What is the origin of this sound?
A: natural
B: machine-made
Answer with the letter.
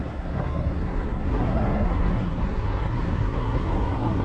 B